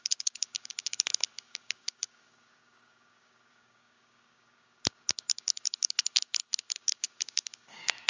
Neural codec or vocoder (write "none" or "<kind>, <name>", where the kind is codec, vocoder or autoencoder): codec, DAC